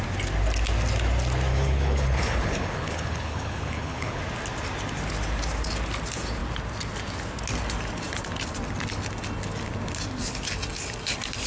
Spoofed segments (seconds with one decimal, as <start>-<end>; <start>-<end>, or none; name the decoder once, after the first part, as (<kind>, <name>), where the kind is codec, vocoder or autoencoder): 1.5-4.2 (codec, HILCodec)